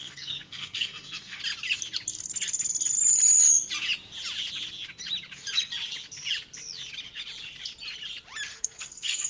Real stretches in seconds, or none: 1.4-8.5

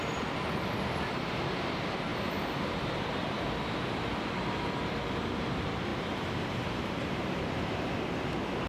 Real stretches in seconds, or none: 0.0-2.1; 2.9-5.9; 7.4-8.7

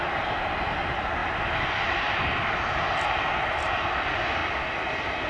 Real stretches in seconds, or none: 0.0-5.3

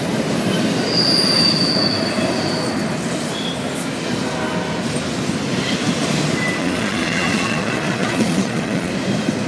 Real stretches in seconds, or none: 0.0-6.6; 8.9-9.5

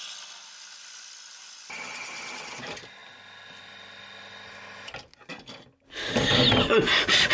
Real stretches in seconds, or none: 0.0-7.3

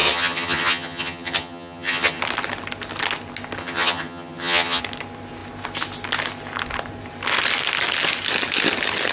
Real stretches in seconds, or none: 2.2-3.6; 4.8-9.1

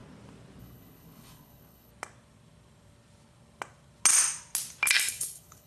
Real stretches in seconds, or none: 0.0-0.6; 1.9-5.1